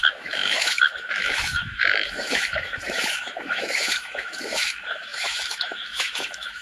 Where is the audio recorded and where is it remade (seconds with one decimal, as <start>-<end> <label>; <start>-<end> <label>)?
0.0-6.6 remade